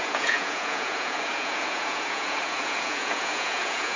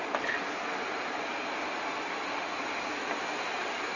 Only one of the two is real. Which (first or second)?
second